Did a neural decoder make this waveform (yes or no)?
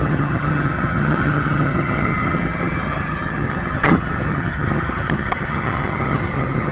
yes